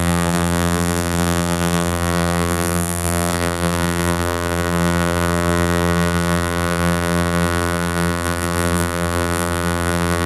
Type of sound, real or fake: fake